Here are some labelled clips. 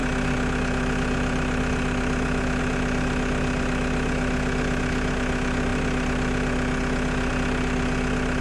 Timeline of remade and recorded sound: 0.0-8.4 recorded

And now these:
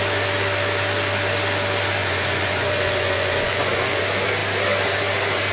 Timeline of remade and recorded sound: 0.0-2.0 recorded; 2.0-4.0 remade; 4.0-5.5 recorded

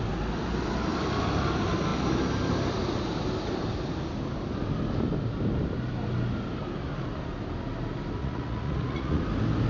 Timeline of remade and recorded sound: 0.0-8.2 recorded; 8.2-9.2 remade; 9.2-9.7 recorded

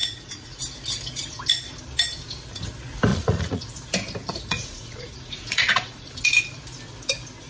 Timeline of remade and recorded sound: 0.0-0.6 remade; 0.6-3.1 recorded; 3.1-3.7 remade; 3.7-4.2 recorded; 4.2-6.2 remade; 6.2-7.5 recorded

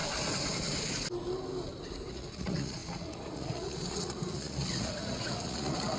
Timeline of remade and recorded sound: 0.0-2.1 recorded; 2.1-6.0 remade